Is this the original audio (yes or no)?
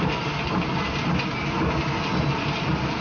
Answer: yes